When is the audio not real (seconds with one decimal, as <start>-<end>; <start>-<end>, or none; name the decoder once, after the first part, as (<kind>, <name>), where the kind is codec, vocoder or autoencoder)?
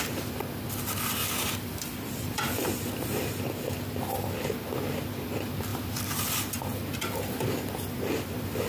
1.2-2.7 (vocoder, BigVGAN v2)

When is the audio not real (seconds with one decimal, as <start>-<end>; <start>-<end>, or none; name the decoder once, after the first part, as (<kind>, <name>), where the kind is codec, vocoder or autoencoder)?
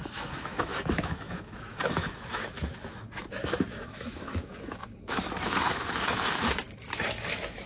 0.0-7.7 (autoencoder, DAC-VAE)